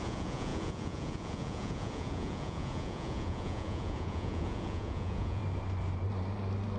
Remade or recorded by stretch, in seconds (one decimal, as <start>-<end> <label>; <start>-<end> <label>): 0.0-5.4 remade; 5.4-6.8 recorded

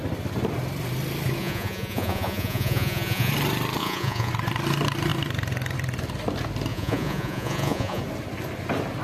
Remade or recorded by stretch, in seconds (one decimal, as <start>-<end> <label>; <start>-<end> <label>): 0.0-1.4 recorded; 1.4-3.3 remade; 3.3-3.8 recorded; 3.8-4.3 remade; 4.3-6.7 recorded; 6.7-8.0 remade; 8.0-9.0 recorded

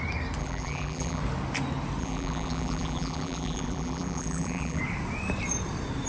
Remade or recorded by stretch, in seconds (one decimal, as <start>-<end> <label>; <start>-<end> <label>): 0.0-0.4 recorded; 0.4-1.2 remade; 1.2-2.0 recorded; 2.0-4.8 remade; 4.8-6.1 recorded

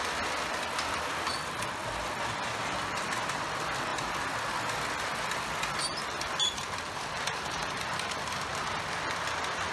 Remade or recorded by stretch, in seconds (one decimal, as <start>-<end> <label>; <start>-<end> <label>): 0.0-1.8 remade; 1.8-2.8 recorded; 2.8-3.9 remade; 3.9-6.2 recorded; 6.2-8.5 remade; 8.5-9.7 recorded